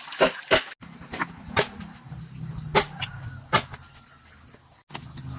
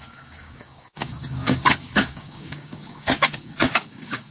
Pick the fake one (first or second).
second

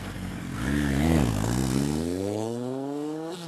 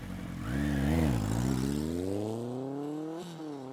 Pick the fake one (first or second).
first